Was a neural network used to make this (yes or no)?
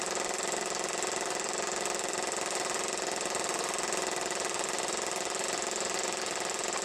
no